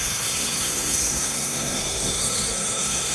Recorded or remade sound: remade